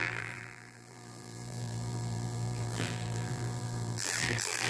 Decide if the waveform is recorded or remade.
remade